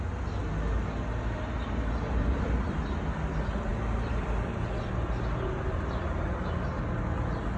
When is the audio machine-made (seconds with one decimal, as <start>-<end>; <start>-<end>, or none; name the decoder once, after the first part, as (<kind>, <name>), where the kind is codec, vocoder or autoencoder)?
none